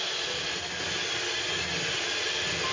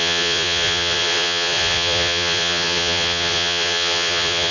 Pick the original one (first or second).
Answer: first